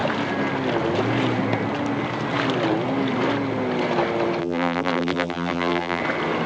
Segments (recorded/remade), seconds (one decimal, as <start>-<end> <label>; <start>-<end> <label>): 0.0-4.4 recorded; 4.4-6.0 remade; 6.0-6.5 recorded